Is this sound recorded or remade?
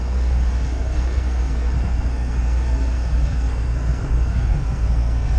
remade